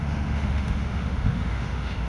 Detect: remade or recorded remade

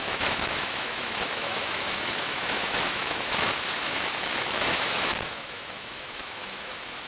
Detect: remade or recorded remade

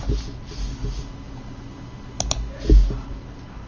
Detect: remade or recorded recorded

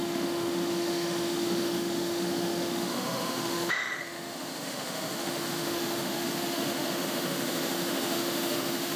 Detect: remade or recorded remade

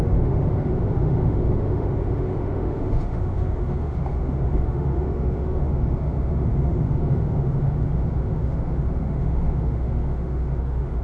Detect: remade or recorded remade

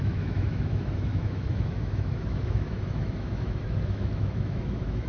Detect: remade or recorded remade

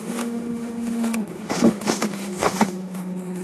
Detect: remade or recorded remade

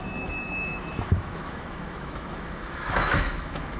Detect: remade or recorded remade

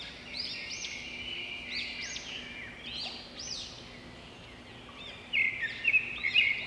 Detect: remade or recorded recorded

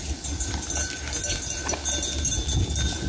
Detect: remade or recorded recorded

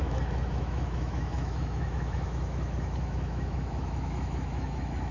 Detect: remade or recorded remade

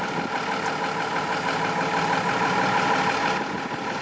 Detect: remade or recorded recorded